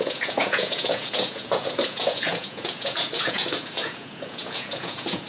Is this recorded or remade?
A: remade